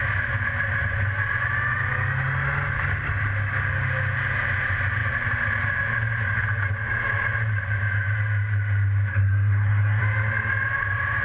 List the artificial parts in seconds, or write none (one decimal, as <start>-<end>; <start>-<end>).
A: 9.1-10.0